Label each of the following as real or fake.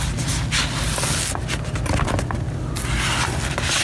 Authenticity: real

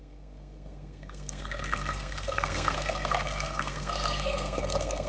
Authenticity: fake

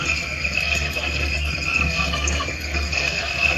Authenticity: fake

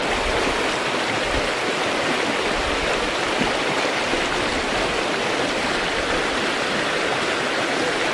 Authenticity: real